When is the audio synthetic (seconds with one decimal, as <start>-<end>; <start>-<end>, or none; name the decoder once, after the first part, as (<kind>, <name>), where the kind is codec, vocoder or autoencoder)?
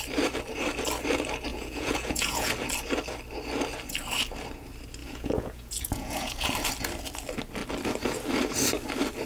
1.5-2.5 (vocoder, Vocos); 5.0-6.5